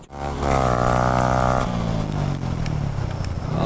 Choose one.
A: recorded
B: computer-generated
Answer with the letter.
A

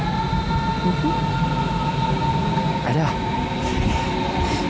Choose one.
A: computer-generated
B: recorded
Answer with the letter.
A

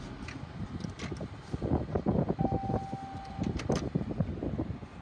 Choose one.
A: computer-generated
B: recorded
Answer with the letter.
B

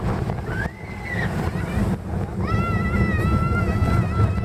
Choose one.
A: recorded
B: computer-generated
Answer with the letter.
A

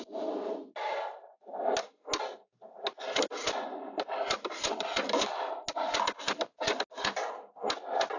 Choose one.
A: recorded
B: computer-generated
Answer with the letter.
A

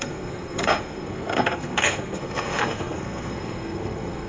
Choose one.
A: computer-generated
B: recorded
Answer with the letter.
A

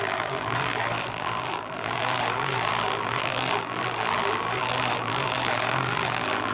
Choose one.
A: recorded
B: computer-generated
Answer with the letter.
B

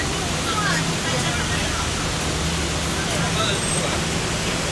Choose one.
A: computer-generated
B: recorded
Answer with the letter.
B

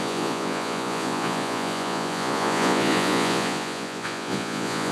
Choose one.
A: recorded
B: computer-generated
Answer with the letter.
B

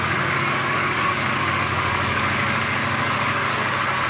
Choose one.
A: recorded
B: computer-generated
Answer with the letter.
B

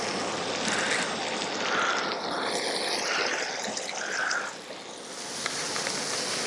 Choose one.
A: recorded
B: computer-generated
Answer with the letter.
A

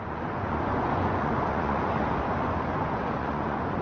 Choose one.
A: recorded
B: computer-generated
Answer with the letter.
B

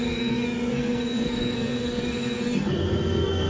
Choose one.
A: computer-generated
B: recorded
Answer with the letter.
A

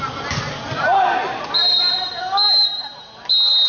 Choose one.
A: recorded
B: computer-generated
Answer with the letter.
A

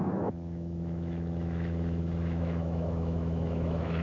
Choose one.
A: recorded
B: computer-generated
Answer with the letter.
B